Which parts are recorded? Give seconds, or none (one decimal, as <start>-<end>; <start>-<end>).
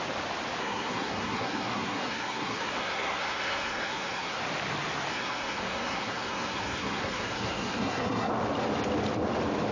0.0-0.6; 4.4-5.1; 8.3-9.7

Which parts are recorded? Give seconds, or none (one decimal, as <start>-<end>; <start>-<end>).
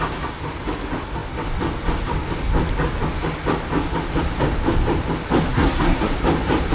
0.0-5.5; 6.1-6.7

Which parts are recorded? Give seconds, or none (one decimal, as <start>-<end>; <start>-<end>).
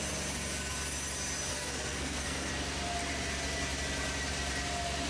0.0-1.5; 2.5-5.1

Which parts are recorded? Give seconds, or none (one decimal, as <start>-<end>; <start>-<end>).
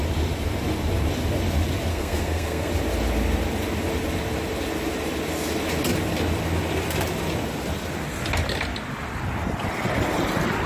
0.0-1.9; 2.7-10.7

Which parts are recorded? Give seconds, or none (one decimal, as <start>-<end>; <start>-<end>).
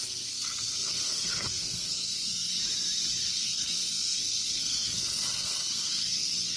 2.6-3.3